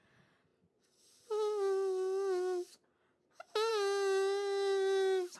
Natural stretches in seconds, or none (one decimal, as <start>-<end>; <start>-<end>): 0.0-5.4